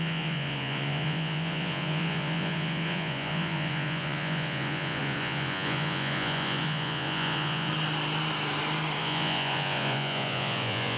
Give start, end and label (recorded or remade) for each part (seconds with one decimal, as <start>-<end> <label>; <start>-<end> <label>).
0.0-7.7 remade; 7.7-9.0 recorded; 9.0-11.0 remade